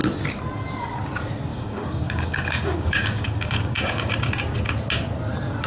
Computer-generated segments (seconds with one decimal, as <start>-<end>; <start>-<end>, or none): 1.5-4.1

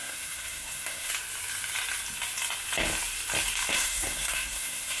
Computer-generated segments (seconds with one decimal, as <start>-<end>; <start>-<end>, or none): 0.0-1.1; 3.7-5.0

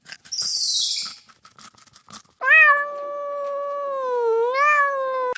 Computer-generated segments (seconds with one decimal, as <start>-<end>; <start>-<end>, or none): none

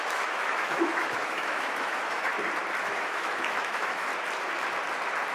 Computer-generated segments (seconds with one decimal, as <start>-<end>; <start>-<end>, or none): 0.0-2.3; 2.8-4.1

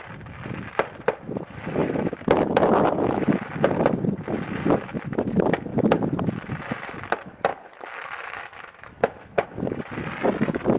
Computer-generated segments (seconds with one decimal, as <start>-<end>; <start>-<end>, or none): 1.8-3.5; 7.5-9.8

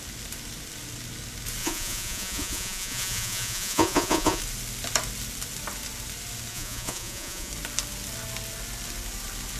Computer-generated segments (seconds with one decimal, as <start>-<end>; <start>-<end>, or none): 1.6-4.4; 6.5-7.5